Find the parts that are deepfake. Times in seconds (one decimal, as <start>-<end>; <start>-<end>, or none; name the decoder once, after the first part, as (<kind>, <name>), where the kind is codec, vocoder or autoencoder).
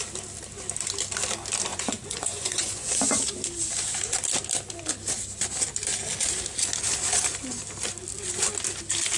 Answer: 1.7-3.2 (vocoder, Vocos)